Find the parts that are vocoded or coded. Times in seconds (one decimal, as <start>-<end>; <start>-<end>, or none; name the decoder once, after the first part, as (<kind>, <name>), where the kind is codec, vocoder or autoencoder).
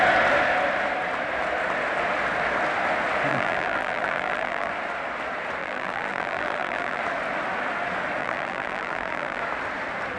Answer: 3.3-4.7 (vocoder, BigVGAN v2); 5.6-7.0; 8.2-9.4